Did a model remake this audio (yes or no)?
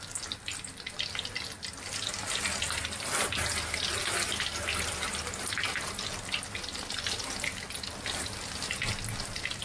no